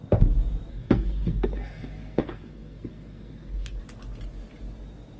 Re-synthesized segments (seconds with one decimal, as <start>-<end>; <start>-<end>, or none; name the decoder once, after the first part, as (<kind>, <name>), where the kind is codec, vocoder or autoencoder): 0.7-3.8 (codec, SNAC)

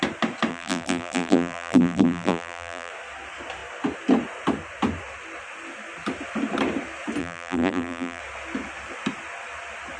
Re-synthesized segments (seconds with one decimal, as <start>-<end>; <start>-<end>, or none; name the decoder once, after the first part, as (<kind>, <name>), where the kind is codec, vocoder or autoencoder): 0.5-2.9 (vocoder, BigVGAN v2); 7.2-8.2